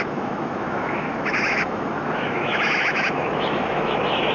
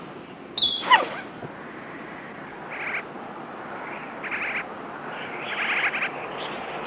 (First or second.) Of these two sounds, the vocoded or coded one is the first